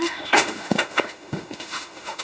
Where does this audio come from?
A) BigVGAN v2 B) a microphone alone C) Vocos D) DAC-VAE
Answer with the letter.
D